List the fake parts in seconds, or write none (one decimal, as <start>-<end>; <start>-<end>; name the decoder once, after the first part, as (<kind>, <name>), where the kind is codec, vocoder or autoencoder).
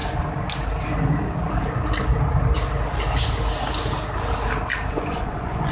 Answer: 4.9-5.7 (vocoder, Vocos)